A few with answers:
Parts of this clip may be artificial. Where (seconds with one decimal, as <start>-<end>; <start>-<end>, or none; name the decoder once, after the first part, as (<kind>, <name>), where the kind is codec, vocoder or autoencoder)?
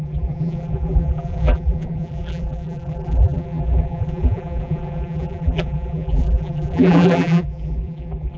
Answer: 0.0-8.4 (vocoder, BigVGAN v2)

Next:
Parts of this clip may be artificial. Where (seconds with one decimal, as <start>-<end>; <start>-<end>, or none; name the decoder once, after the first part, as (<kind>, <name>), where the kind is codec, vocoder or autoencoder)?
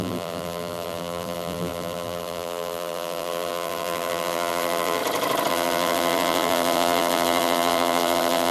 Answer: 0.0-5.0 (vocoder, BigVGAN v2); 5.5-8.5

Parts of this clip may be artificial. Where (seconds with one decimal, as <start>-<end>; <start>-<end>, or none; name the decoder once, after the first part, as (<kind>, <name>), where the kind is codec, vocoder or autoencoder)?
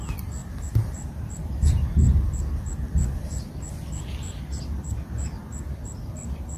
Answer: none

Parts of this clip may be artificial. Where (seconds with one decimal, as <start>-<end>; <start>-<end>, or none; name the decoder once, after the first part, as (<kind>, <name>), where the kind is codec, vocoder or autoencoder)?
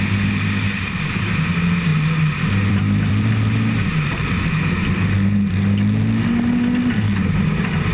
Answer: 1.9-3.3 (vocoder, BigVGAN v2)